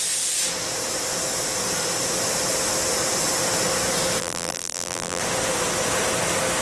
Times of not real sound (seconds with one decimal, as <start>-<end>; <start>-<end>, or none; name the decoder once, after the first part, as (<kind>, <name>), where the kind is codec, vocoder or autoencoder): 4.2-5.2 (vocoder, BigVGAN v2)